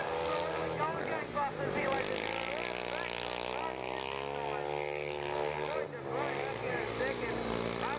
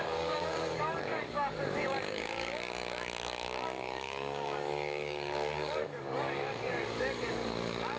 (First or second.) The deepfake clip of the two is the second